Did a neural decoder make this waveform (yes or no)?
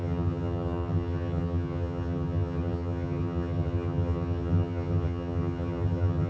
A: yes